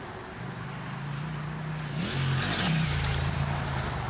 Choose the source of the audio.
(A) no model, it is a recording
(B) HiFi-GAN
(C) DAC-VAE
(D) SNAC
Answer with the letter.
A